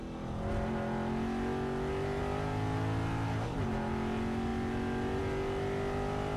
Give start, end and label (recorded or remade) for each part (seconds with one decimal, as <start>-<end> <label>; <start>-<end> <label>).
0.0-6.4 recorded